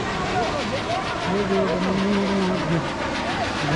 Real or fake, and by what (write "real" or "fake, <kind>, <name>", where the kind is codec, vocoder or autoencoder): real